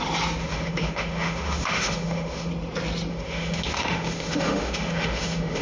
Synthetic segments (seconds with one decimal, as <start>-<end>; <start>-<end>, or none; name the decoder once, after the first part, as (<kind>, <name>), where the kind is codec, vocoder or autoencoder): 0.4-2.5 (autoencoder, DAC-VAE); 3.1-5.6